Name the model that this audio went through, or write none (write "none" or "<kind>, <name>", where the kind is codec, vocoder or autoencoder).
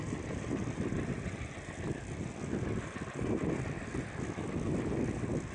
none